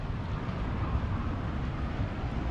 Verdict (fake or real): real